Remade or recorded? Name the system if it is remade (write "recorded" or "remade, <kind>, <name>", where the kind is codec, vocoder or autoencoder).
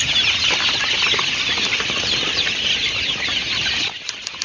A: recorded